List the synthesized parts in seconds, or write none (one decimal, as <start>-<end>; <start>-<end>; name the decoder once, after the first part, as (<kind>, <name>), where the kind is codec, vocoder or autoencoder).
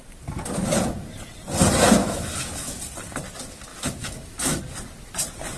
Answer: 2.0-2.8 (autoencoder, DAC-VAE); 3.7-4.6